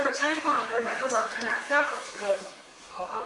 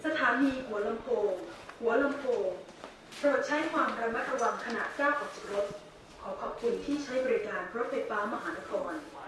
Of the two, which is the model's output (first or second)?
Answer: first